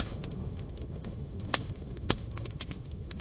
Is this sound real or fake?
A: fake